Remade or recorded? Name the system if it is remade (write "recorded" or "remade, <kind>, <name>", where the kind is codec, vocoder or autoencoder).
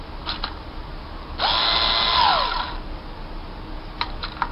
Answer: recorded